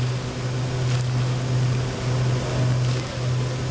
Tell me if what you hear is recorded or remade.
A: recorded